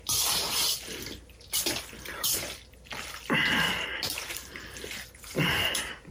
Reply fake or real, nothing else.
fake